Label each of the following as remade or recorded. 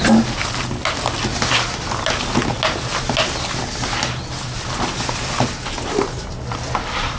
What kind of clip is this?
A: recorded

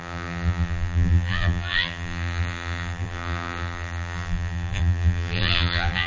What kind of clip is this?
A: remade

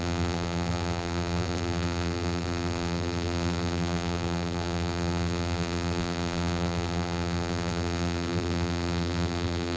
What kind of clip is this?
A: remade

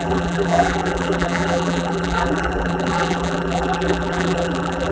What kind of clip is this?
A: remade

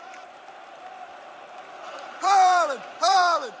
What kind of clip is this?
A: remade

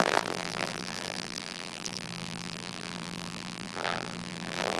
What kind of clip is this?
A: remade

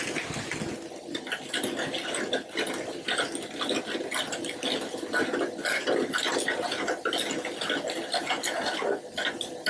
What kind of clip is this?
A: recorded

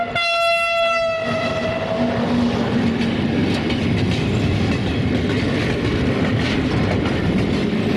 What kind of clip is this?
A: recorded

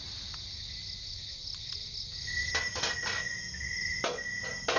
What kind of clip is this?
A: recorded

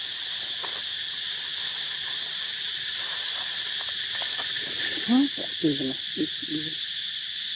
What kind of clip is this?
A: recorded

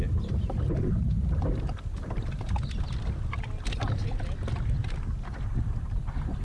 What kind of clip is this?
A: recorded